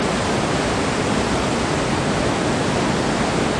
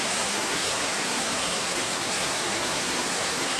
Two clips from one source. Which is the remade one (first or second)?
second